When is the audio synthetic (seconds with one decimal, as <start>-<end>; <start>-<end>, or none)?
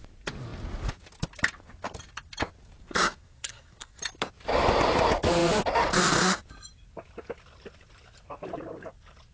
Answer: 2.8-4.0